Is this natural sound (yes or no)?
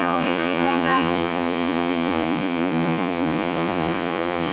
no